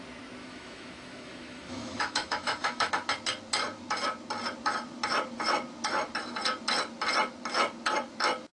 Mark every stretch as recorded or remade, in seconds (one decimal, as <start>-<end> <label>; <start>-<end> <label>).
0.0-0.4 recorded; 0.4-2.9 remade; 2.9-8.5 recorded